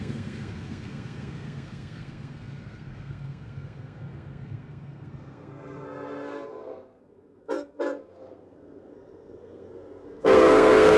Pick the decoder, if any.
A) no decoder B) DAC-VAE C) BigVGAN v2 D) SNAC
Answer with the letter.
D